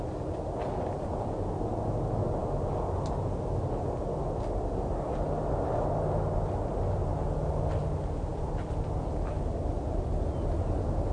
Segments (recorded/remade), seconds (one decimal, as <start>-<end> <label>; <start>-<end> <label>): 0.0-11.1 recorded